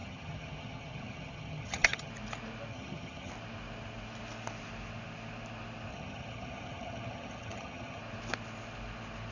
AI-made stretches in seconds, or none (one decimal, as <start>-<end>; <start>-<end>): 0.0-2.1; 2.7-3.3; 5.9-8.0